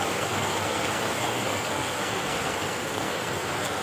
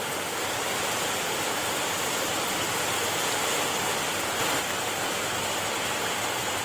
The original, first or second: second